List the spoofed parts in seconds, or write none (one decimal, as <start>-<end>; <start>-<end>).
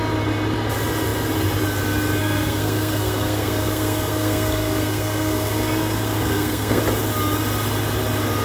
2.2-6.8